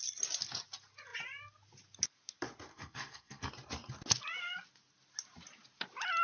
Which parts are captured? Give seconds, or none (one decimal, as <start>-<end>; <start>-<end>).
0.0-2.7; 3.5-6.2